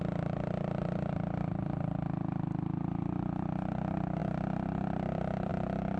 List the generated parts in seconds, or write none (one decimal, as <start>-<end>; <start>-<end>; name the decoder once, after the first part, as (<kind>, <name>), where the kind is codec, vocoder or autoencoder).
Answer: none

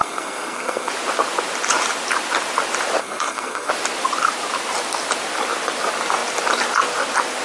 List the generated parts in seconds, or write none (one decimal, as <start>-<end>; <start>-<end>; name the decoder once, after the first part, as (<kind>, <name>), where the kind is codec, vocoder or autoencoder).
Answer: 0.0-0.9 (codec, SNAC); 3.0-3.7

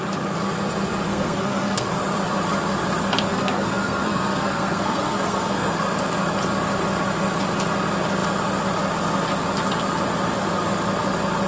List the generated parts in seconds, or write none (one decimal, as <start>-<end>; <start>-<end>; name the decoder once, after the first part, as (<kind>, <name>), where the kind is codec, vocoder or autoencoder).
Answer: 1.1-1.9 (codec, SNAC); 3.3-5.7

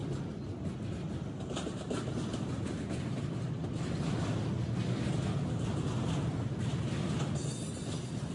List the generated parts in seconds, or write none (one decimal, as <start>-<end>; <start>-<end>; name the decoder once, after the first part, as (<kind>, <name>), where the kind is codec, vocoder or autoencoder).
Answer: none